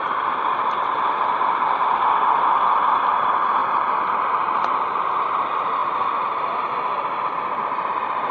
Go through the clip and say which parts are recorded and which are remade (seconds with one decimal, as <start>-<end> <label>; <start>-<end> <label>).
0.0-8.3 recorded

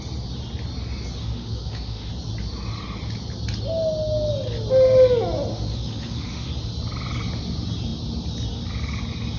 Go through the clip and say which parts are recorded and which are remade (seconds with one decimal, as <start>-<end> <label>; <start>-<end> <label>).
0.0-1.2 recorded; 1.2-2.1 remade; 2.1-5.5 recorded; 5.5-6.5 remade; 6.5-9.4 recorded

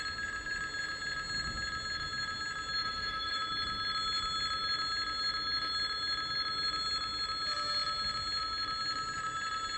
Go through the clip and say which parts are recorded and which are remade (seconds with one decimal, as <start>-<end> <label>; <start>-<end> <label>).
0.0-2.8 recorded; 2.8-3.4 remade; 3.4-9.8 recorded

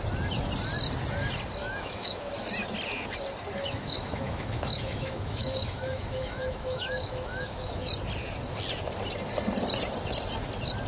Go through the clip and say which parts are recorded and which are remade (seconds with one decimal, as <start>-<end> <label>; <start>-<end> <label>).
0.0-1.6 recorded; 1.6-2.3 remade; 2.3-3.6 recorded; 3.6-7.9 remade; 7.9-10.9 recorded